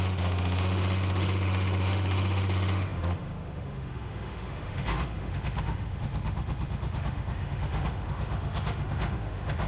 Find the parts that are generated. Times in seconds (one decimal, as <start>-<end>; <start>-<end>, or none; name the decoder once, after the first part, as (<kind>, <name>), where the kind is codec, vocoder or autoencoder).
0.0-9.7 (autoencoder, DAC-VAE)